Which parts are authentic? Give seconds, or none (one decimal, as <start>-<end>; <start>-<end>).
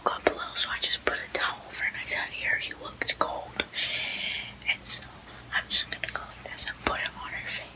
0.0-7.8